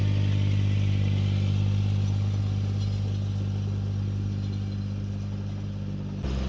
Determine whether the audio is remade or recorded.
recorded